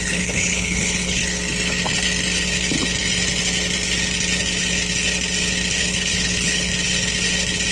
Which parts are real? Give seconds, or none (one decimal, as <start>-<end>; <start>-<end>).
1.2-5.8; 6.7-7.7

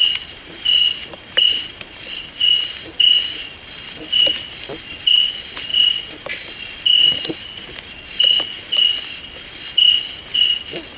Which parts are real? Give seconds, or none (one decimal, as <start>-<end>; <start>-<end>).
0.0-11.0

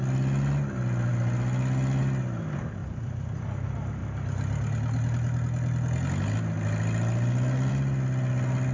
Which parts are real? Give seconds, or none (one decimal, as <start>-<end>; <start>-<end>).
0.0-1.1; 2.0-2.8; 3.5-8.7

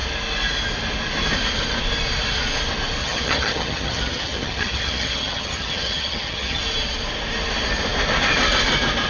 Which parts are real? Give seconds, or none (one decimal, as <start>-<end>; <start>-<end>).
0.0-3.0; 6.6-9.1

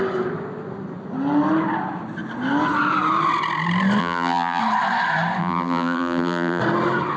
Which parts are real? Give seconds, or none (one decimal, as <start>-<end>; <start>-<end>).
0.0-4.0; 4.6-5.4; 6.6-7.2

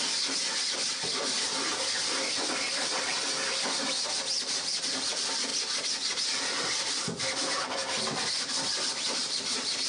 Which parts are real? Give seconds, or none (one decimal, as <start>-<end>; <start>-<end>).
1.7-2.7; 5.5-7.2

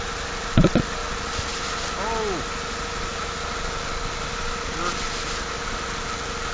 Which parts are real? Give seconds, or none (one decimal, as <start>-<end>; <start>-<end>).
0.0-6.5

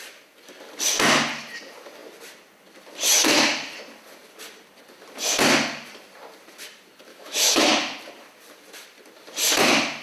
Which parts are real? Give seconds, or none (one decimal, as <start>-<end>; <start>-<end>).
0.0-7.1; 7.7-10.0